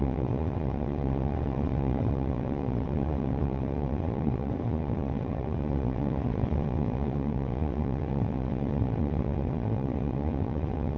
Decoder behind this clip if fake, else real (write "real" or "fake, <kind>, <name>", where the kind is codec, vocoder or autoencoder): fake, vocoder, WaveNeXt